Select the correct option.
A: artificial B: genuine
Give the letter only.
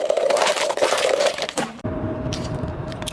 A